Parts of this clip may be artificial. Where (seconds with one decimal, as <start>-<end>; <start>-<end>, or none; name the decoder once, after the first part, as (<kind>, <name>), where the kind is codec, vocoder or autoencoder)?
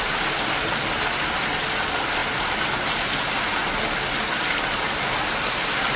none